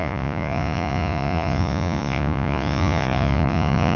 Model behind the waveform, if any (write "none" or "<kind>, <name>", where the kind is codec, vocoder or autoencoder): vocoder, Vocos